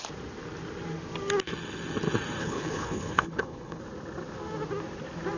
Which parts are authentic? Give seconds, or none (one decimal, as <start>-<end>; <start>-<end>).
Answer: 0.0-2.4; 3.8-5.4